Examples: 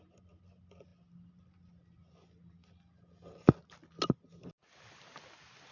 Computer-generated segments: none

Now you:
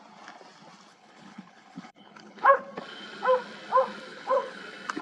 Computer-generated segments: 0.9-2.6 (codec, HILCodec); 4.1-4.6

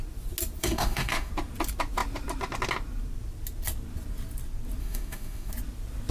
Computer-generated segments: 0.6-1.3 (autoencoder, DAC-VAE); 4.8-5.5

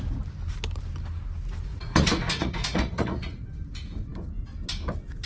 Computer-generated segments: 1.7-3.6 (vocoder, Vocos)

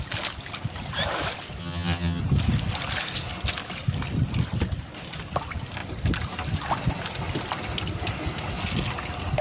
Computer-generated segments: 1.6-2.2 (vocoder, HiFi-GAN)